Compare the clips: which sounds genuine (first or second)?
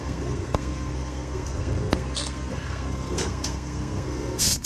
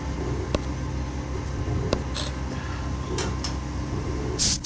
second